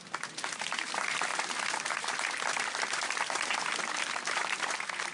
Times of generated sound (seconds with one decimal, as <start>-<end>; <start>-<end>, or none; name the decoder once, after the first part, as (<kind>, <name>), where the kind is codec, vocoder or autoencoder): none